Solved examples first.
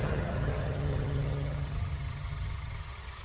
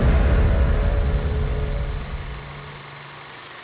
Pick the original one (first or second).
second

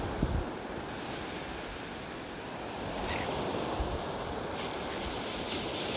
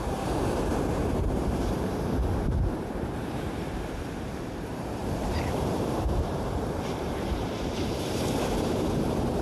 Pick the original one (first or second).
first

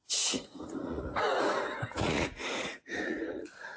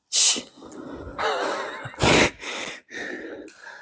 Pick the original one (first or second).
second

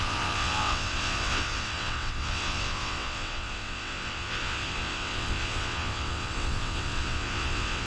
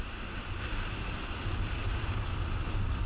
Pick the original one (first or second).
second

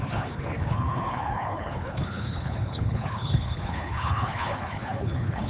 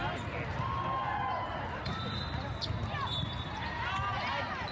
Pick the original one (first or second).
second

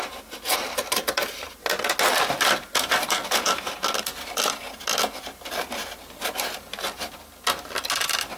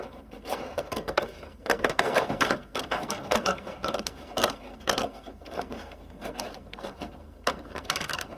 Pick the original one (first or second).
first